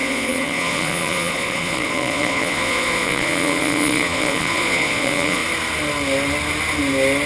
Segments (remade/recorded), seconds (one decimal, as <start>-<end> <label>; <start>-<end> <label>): 0.0-5.4 remade; 5.4-7.3 recorded